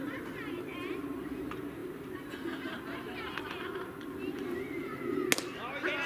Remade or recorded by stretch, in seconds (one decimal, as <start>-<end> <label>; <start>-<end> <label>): 0.0-6.1 recorded